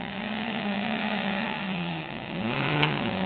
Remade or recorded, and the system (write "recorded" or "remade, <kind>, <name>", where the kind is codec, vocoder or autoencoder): remade, vocoder, WaveNeXt